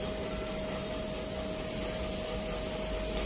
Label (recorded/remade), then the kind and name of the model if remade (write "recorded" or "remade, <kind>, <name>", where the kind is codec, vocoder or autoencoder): recorded